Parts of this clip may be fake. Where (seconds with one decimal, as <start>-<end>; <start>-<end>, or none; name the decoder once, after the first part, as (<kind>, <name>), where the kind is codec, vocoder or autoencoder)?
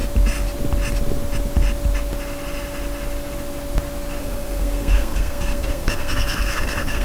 4.2-7.0 (codec, SNAC)